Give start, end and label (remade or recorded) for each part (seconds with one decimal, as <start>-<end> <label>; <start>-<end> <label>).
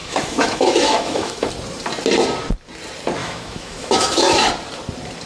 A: 0.0-1.5 remade; 1.5-3.2 recorded; 3.2-4.5 remade; 4.5-5.3 recorded